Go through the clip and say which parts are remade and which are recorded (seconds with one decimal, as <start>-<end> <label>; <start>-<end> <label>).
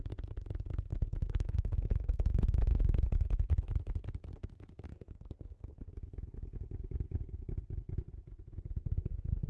0.0-0.9 recorded; 0.9-3.0 remade; 3.0-4.9 recorded; 4.9-5.9 remade; 5.9-8.8 recorded; 8.8-9.5 remade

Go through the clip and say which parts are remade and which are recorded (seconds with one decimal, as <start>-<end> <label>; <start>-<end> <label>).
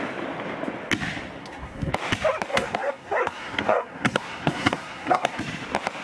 0.0-1.4 recorded; 1.4-1.9 remade; 1.9-2.5 recorded; 2.5-5.4 remade; 5.4-6.0 recorded